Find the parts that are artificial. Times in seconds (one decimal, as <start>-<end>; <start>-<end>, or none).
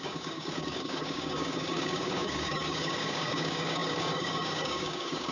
0.0-5.3